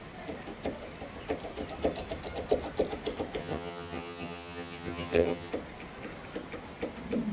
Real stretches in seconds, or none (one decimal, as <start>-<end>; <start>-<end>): 0.0-3.4; 5.5-7.3